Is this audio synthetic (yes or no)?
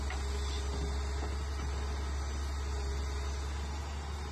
no